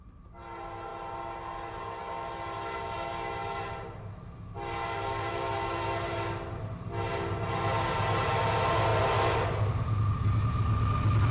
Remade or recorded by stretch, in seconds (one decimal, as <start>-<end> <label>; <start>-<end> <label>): 0.0-11.3 recorded